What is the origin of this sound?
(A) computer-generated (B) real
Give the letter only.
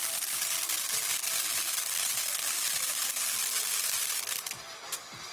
B